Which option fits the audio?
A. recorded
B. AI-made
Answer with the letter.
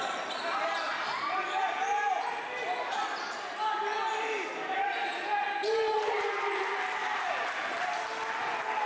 A